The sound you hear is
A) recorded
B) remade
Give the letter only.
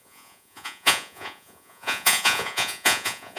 B